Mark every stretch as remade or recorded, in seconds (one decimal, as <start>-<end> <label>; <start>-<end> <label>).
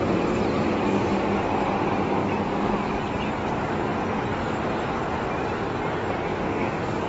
0.0-2.2 recorded; 2.2-3.0 remade; 3.0-6.3 recorded; 6.3-7.1 remade